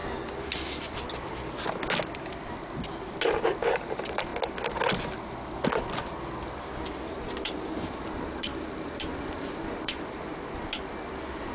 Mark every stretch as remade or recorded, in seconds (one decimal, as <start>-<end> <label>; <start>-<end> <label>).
0.0-3.3 recorded; 3.3-4.3 remade; 4.3-7.1 recorded; 7.1-10.3 remade; 10.3-11.5 recorded